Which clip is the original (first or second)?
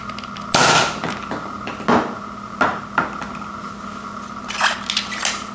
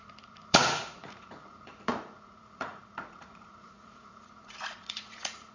first